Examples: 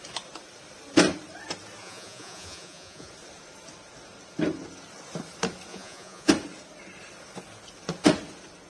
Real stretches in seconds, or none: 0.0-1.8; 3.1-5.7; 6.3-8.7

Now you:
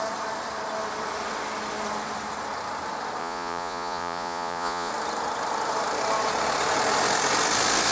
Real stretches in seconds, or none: 0.0-3.2; 4.9-7.9

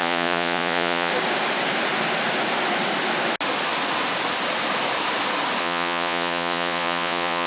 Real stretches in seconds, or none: 1.1-5.6

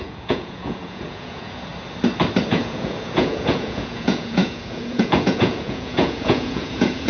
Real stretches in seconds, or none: 1.7-2.5